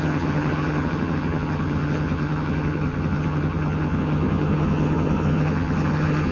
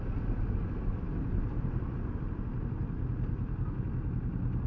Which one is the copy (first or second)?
first